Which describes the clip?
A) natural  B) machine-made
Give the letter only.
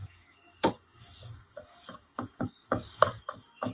B